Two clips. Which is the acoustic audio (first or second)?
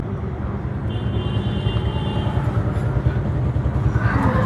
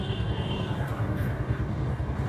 first